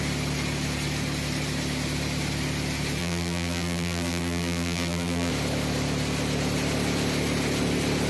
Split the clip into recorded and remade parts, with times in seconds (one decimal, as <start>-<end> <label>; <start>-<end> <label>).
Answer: 0.0-3.0 recorded; 3.0-5.3 remade; 5.3-8.1 recorded